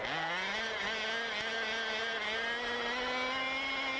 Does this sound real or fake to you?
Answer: real